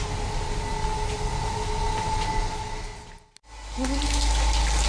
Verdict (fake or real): real